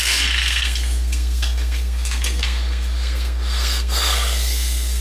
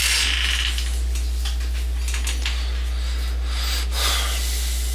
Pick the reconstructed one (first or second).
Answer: first